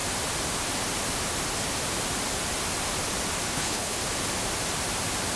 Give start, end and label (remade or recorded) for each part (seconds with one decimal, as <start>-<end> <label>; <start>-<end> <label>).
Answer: 0.0-3.5 recorded; 3.5-4.0 remade; 4.0-5.4 recorded